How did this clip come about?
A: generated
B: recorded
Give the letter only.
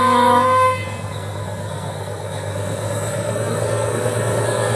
A